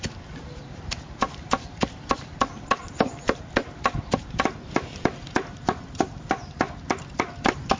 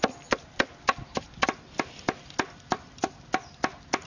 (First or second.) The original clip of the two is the second